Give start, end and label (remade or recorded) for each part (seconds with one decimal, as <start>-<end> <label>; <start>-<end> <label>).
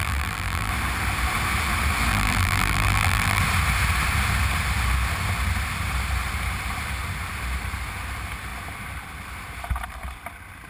0.0-0.7 remade; 0.7-2.1 recorded; 2.1-3.4 remade; 3.4-10.7 recorded